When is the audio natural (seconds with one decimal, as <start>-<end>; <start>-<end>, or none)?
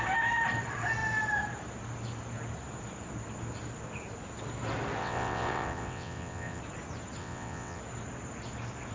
0.0-5.0; 6.6-7.2; 7.8-8.9